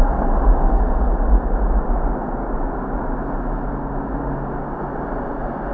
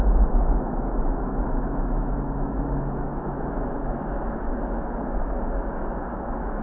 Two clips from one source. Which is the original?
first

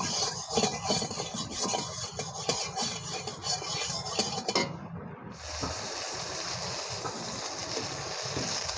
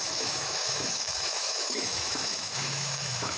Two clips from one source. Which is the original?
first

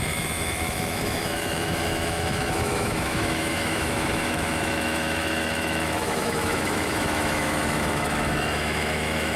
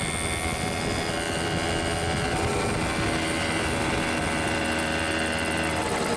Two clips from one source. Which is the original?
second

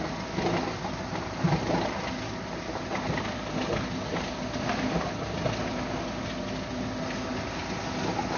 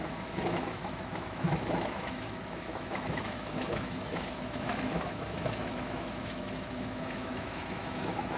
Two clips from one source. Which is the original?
first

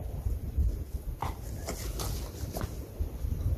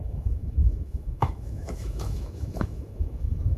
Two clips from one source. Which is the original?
first